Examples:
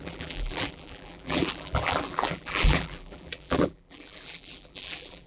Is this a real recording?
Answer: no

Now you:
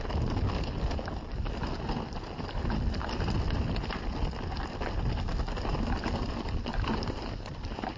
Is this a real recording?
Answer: yes